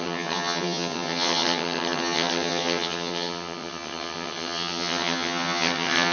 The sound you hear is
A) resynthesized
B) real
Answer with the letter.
A